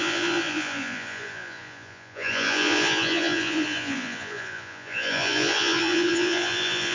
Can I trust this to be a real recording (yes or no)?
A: no